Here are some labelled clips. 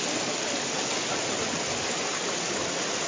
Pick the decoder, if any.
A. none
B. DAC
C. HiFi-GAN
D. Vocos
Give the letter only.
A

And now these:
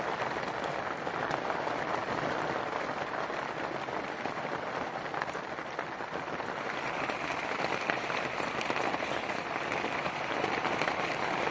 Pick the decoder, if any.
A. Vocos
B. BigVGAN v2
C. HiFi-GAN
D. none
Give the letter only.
D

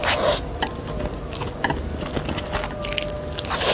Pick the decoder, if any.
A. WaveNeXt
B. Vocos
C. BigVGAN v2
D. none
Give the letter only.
D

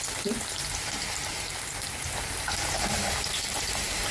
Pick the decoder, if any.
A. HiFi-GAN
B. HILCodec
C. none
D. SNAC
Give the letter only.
C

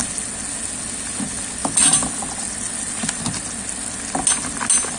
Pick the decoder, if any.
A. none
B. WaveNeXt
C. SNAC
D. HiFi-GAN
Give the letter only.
A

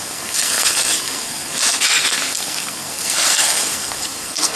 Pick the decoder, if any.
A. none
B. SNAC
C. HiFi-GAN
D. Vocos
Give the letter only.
B